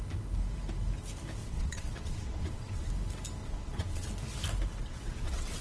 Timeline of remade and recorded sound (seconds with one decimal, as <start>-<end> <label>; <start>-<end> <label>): 0.0-1.4 recorded; 1.4-2.9 remade; 2.9-3.4 recorded; 3.4-4.1 remade; 4.1-4.8 recorded; 4.8-5.6 remade